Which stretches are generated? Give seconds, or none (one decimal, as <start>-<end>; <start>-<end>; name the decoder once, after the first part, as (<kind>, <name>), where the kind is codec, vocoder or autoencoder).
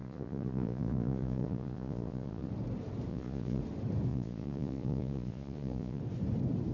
0.0-2.5 (vocoder, Vocos); 3.1-3.6; 4.1-6.0